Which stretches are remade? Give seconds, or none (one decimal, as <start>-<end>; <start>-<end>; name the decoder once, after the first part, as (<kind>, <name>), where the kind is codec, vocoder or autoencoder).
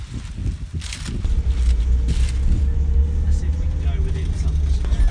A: none